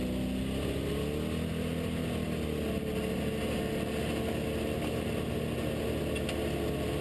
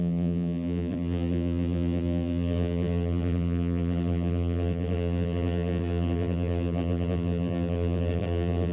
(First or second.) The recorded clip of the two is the first